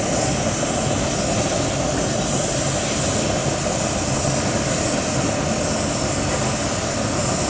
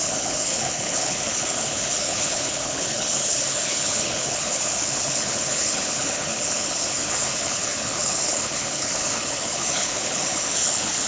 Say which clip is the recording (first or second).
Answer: first